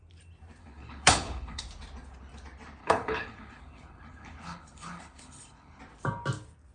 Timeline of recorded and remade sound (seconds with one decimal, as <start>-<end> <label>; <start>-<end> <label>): 0.0-0.6 recorded; 0.6-1.6 remade; 1.6-2.8 recorded; 2.8-5.8 remade; 5.8-6.7 recorded